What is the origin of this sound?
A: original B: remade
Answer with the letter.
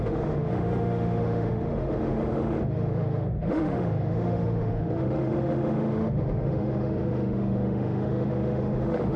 B